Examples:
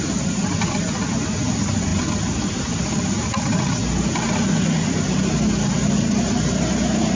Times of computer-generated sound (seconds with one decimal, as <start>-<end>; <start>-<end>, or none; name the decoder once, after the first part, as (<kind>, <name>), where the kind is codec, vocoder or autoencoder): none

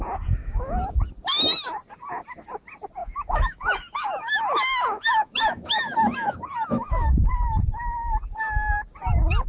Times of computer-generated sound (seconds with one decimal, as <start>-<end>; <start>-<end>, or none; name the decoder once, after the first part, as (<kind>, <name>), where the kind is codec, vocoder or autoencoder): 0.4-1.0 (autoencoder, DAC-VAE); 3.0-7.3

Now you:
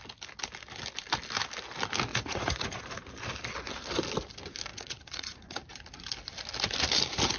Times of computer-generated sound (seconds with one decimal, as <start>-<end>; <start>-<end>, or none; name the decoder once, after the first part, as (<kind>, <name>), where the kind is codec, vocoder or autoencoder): 2.1-2.8 (vocoder, Vocos); 4.7-5.6